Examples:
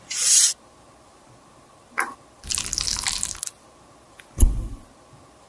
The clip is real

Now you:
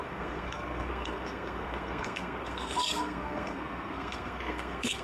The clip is fake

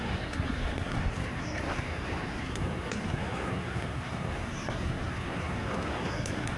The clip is fake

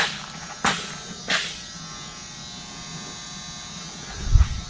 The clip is real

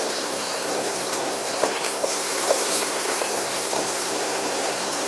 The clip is fake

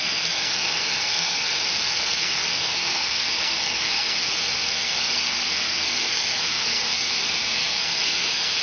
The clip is fake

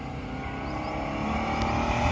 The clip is real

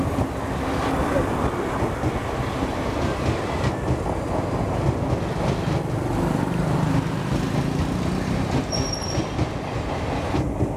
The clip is real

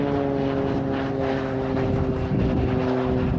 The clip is real